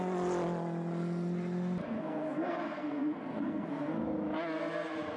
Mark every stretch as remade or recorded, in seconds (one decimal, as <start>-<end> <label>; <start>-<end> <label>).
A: 0.0-1.8 recorded; 1.8-3.9 remade; 3.9-5.2 recorded